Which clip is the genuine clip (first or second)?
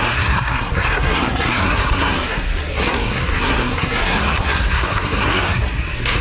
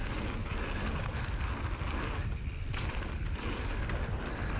second